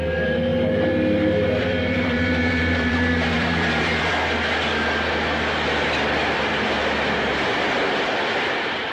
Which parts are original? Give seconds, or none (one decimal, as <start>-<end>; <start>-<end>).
0.5-1.6; 4.1-7.9